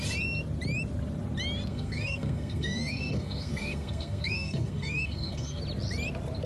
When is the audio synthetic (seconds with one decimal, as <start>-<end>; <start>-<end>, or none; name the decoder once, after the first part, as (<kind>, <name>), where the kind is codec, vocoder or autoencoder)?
1.7-5.6 (codec, SNAC)